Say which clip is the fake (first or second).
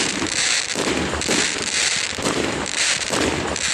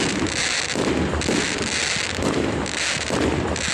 first